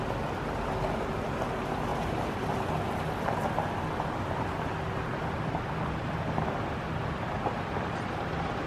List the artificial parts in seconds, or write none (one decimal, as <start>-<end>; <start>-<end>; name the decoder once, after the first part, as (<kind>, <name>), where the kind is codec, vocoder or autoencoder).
1.9-2.5 (vocoder, BigVGAN v2)

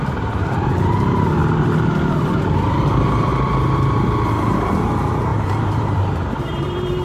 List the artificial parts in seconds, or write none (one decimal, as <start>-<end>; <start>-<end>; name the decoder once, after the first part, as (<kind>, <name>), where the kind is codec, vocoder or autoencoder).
0.0-1.4 (vocoder, BigVGAN v2); 2.6-3.3; 4.3-7.0

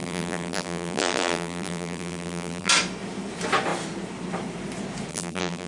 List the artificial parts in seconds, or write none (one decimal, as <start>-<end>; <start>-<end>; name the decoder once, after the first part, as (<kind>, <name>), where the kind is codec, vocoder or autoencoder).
0.0-2.7 (vocoder, BigVGAN v2); 5.1-5.7

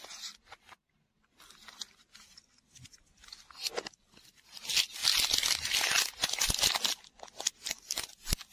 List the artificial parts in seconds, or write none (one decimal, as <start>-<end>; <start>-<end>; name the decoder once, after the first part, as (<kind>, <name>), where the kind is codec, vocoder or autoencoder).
none

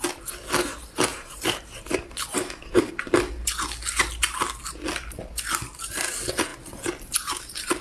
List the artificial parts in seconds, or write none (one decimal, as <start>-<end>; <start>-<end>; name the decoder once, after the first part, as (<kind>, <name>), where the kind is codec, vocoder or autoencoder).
1.1-2.9 (vocoder, BigVGAN v2)

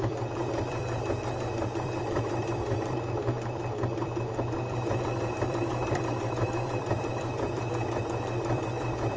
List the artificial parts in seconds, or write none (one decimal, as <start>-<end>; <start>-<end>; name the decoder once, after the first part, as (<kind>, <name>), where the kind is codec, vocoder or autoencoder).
0.0-9.2 (vocoder, BigVGAN v2)

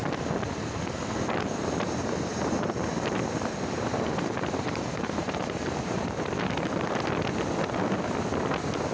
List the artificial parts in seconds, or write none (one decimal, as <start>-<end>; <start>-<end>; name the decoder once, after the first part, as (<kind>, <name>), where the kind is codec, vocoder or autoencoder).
2.3-6.9 (vocoder, BigVGAN v2)

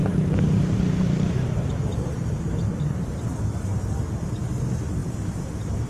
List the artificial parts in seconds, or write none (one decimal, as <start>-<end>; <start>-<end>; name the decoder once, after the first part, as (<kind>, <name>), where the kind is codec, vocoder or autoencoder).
0.0-2.7 (vocoder, BigVGAN v2); 3.7-4.5